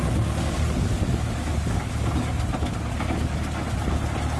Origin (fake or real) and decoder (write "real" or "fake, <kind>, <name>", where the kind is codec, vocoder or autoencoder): real